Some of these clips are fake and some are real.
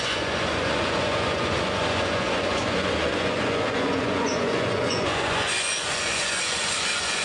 fake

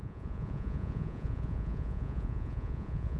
fake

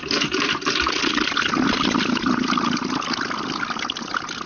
real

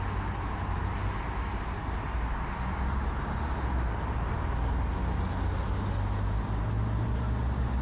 real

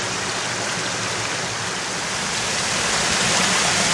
real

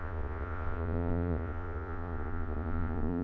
fake